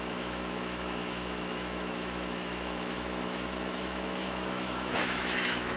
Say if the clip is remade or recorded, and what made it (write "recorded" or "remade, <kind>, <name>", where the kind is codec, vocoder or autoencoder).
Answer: remade, autoencoder, DAC-VAE